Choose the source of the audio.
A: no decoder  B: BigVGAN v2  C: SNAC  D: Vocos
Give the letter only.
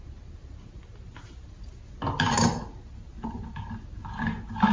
A